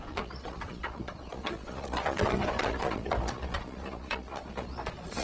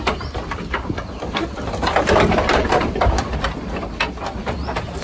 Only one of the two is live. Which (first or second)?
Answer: second